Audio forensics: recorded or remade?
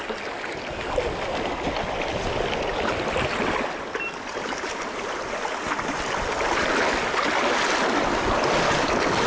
recorded